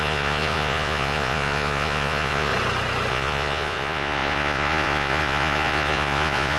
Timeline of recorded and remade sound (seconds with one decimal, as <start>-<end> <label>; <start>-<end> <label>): 0.0-2.5 remade; 2.5-3.1 recorded; 3.1-6.6 remade